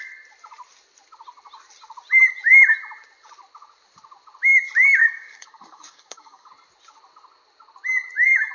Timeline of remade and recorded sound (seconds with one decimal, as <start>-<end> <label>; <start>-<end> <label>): 0.0-5.0 recorded; 5.0-6.5 remade; 6.5-8.5 recorded